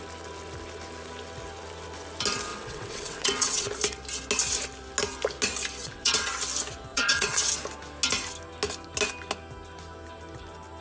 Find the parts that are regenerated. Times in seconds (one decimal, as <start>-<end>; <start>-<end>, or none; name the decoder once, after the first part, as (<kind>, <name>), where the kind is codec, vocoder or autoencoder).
2.5-3.7 (vocoder, WaveNeXt); 5.8-6.3; 6.9-7.5